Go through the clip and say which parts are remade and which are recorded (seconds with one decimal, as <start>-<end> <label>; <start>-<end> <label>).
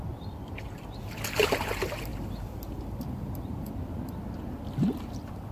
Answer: 0.0-5.5 recorded